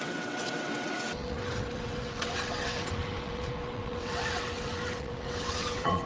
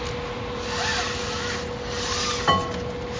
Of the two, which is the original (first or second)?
second